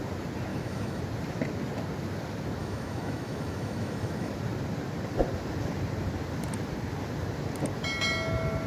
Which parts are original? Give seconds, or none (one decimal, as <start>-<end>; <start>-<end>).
0.0-0.5; 1.0-2.6; 4.3-8.7